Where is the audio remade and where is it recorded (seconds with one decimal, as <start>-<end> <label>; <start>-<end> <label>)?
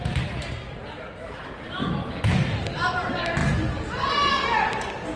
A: 0.0-5.2 recorded